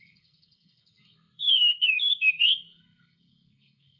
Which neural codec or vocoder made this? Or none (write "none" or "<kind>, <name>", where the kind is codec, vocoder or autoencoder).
codec, SNAC